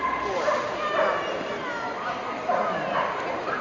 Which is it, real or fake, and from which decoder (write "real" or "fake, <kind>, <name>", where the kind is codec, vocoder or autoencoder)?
real